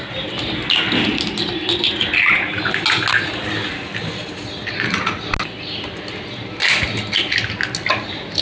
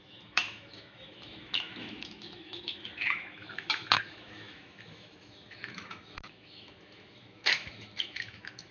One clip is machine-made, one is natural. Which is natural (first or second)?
first